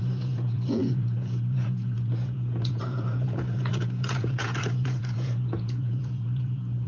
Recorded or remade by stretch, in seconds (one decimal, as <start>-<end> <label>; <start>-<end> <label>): 0.0-6.9 remade